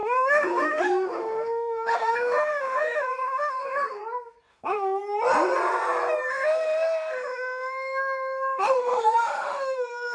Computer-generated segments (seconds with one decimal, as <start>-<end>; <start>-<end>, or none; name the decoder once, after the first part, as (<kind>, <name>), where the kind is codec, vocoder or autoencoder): 0.0-4.0 (autoencoder, DAC-VAE); 4.5-5.0; 6.3-10.1